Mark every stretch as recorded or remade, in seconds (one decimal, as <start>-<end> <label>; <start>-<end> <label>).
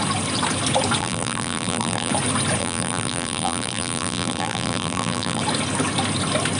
0.0-1.0 recorded; 1.0-2.1 remade; 2.1-2.6 recorded; 2.6-5.4 remade; 5.4-6.6 recorded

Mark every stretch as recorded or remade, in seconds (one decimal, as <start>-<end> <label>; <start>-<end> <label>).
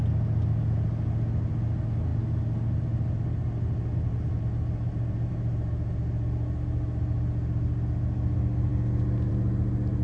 0.0-10.0 recorded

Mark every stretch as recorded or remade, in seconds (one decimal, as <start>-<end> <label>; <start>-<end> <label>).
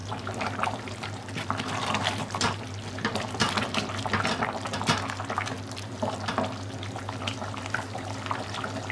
0.0-3.9 remade; 3.9-8.9 recorded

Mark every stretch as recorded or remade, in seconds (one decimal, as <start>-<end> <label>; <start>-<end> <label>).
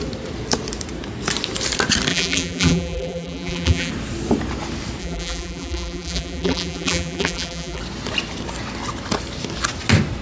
0.0-2.1 recorded; 2.1-3.9 remade; 3.9-5.0 recorded; 5.0-7.8 remade; 7.8-10.2 recorded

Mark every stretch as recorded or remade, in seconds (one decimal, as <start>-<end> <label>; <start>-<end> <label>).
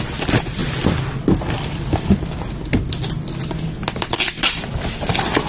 0.0-0.6 remade; 0.6-3.9 recorded; 3.9-5.5 remade